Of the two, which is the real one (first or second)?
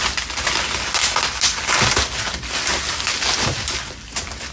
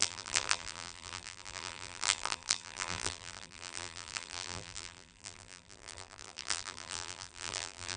first